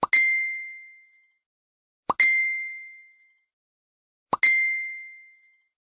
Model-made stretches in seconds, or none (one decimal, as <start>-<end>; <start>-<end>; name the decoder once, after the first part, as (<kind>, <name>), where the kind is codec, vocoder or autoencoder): 2.4-3.0 (codec, DAC)